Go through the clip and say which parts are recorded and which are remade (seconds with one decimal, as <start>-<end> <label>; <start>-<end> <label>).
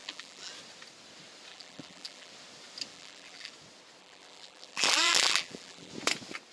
0.0-0.5 remade; 0.5-1.5 recorded; 1.5-2.3 remade; 2.3-2.9 recorded; 2.9-3.5 remade; 3.5-4.0 recorded; 4.0-5.9 remade; 5.9-6.5 recorded